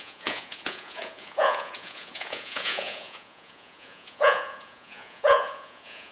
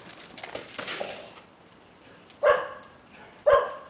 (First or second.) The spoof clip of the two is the first